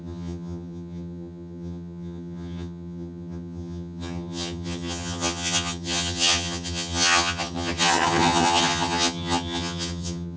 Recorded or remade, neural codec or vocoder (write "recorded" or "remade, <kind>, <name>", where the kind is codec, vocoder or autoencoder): remade, vocoder, HiFi-GAN